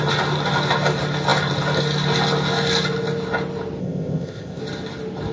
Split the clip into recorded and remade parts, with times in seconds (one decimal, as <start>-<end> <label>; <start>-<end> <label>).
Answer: 0.0-3.8 recorded; 3.8-4.6 remade; 4.6-5.3 recorded